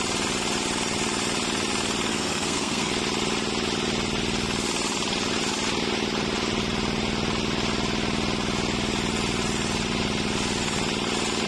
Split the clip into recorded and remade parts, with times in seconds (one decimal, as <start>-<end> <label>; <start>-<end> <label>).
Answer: 0.0-2.1 recorded; 2.1-2.9 remade; 2.9-11.5 recorded